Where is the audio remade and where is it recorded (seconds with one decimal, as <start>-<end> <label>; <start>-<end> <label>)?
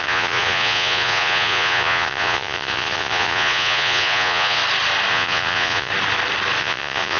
0.0-4.6 remade; 4.6-5.1 recorded; 5.1-5.9 remade; 5.9-6.6 recorded; 6.6-7.2 remade